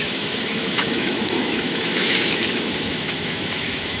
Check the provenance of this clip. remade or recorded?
remade